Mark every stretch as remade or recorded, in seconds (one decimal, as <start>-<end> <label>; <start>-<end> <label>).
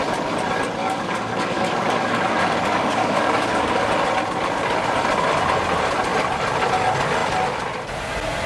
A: 0.0-0.8 recorded; 0.8-3.9 remade; 3.9-8.5 recorded